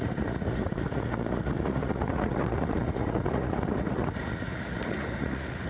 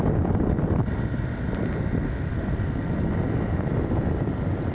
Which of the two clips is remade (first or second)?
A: first